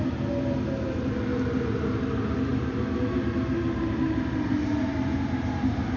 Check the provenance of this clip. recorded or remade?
recorded